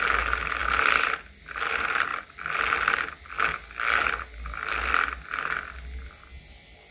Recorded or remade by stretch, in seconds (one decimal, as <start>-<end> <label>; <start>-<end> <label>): 0.0-6.9 recorded